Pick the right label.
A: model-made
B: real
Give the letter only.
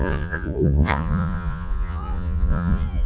A